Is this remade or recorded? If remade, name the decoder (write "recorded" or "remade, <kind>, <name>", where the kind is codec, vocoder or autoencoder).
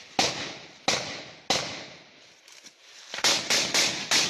recorded